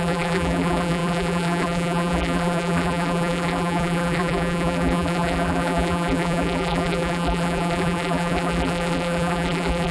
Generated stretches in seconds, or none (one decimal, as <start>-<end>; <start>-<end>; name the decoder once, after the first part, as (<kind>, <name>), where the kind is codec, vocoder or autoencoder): 0.0-9.9 (vocoder, BigVGAN v2)